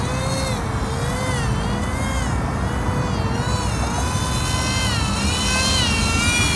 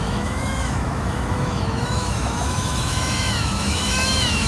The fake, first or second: second